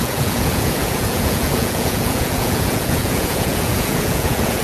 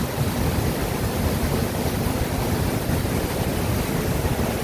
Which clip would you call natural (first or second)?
second